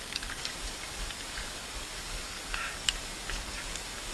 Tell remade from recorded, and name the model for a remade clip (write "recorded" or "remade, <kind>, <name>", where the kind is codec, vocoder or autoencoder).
remade, codec, DAC